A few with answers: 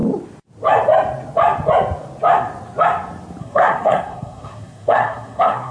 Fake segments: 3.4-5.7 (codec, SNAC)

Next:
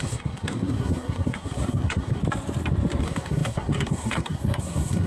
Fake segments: 0.0-2.2 (codec, SNAC); 3.0-5.1

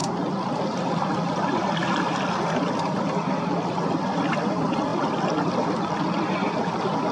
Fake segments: 3.4-4.9 (vocoder, BigVGAN v2)

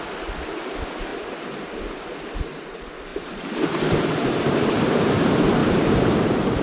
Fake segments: 1.1-1.8 (vocoder, BigVGAN v2); 3.1-4.8; 5.6-6.6

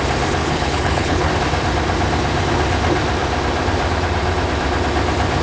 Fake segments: 0.4-1.3 (codec, HILCodec)

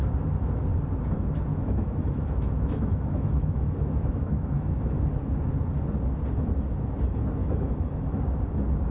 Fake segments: 1.5-4.8 (autoencoder, DAC-VAE); 7.4-8.2

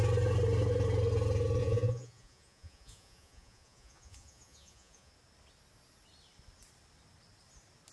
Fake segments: 1.6-5.1 (vocoder, Vocos)